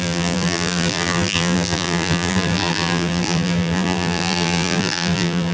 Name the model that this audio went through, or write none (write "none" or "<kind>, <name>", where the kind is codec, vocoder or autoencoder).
vocoder, BigVGAN v2